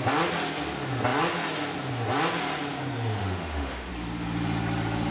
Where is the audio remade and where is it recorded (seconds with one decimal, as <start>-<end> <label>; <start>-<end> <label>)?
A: 0.0-3.2 recorded; 3.2-3.9 remade; 3.9-5.1 recorded